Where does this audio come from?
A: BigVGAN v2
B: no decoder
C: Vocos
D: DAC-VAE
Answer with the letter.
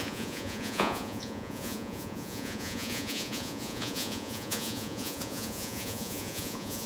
C